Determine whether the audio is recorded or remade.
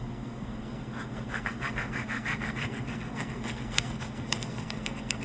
remade